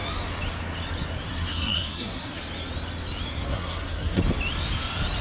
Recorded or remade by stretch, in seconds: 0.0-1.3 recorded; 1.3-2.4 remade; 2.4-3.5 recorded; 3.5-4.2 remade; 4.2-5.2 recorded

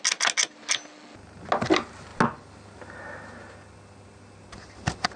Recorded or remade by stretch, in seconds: 0.0-5.2 recorded

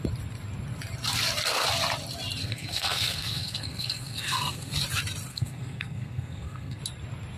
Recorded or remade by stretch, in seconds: 0.0-2.4 recorded; 2.4-4.7 remade; 4.7-5.3 recorded; 5.3-6.8 remade; 6.8-7.4 recorded

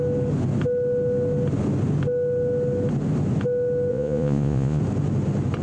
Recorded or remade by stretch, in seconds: 0.0-3.9 recorded; 3.9-4.8 remade; 4.8-5.6 recorded